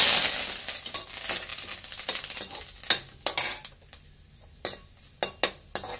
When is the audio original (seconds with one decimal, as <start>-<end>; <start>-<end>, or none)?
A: 0.0-6.0